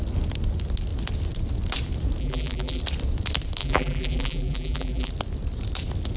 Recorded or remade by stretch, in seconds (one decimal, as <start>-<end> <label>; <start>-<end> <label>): 0.0-2.2 recorded; 2.2-2.8 remade; 2.8-3.6 recorded; 3.6-5.1 remade; 5.1-6.2 recorded